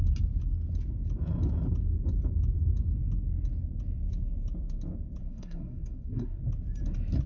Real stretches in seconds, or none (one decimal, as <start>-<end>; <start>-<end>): 0.0-5.2; 6.4-7.3

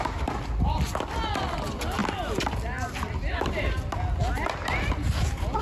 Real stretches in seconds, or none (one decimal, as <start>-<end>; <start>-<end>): 0.0-5.6